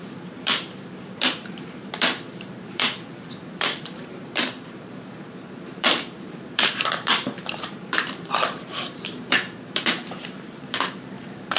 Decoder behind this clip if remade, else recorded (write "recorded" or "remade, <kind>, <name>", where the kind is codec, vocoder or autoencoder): remade, vocoder, BigVGAN v2